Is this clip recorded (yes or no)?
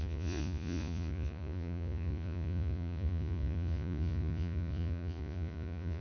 no